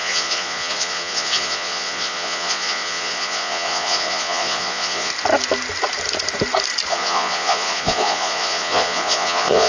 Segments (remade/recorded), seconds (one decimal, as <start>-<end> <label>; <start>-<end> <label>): 0.0-5.1 remade; 5.1-6.9 recorded; 6.9-9.7 remade